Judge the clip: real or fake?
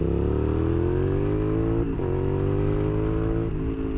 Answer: real